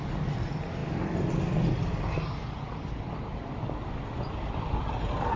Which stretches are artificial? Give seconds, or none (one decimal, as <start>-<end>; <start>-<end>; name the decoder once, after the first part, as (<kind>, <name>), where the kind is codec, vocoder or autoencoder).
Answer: none